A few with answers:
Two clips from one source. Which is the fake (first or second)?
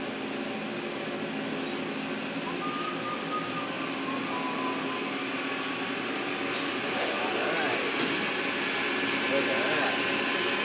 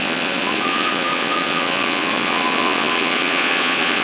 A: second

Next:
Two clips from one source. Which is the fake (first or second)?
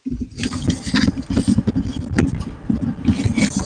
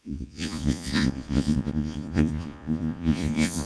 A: second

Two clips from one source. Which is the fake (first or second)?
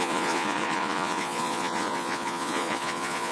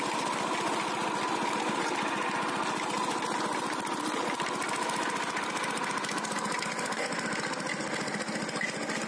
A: first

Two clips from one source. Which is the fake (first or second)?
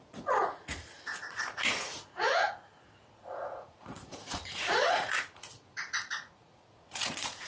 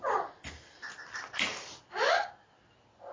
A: first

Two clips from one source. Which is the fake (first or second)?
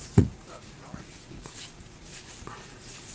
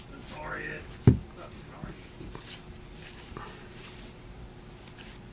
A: first